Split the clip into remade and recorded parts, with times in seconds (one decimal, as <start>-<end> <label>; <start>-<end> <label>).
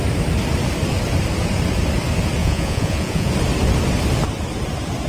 0.0-2.4 recorded; 2.4-3.3 remade; 3.3-5.1 recorded